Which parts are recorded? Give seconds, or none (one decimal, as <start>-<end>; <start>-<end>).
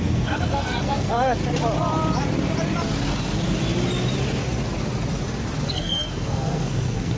1.4-5.7